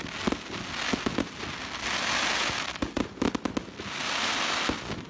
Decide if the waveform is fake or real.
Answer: real